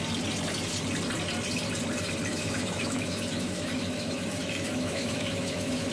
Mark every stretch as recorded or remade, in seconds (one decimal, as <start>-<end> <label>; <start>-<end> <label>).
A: 0.0-2.3 recorded; 2.3-5.9 remade